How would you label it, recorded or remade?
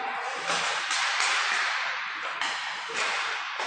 recorded